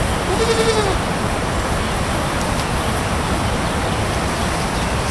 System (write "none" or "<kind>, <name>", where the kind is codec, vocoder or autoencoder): none